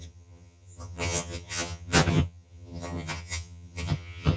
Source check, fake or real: fake